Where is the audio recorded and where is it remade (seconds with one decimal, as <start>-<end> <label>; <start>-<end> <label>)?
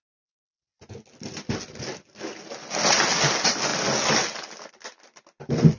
0.0-5.8 recorded